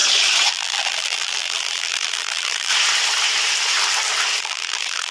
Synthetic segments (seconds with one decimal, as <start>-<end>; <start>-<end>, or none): 0.5-2.7; 4.4-5.1